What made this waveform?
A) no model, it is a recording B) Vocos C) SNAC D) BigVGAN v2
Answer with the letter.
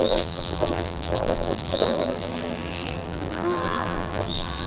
D